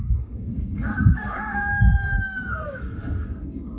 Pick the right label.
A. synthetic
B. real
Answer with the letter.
A